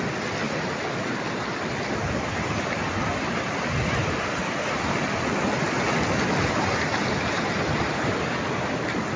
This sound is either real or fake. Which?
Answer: real